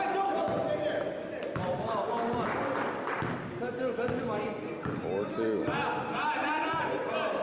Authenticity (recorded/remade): recorded